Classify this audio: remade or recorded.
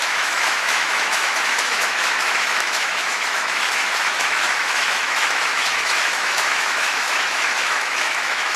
remade